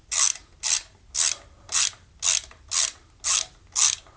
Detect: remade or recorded recorded